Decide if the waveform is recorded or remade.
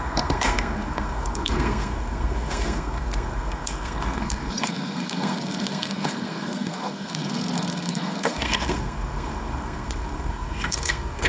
remade